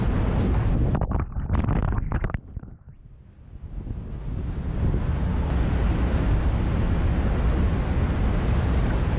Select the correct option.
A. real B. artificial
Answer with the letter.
A